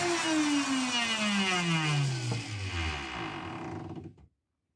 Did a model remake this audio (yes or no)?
no